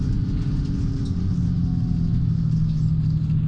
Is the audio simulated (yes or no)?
no